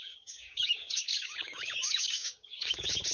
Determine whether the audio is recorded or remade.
remade